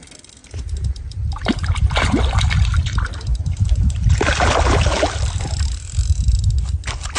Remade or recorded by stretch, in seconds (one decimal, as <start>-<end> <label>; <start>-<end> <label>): 0.0-0.4 recorded; 0.4-2.2 remade; 2.2-3.3 recorded; 3.3-4.3 remade; 4.3-7.2 recorded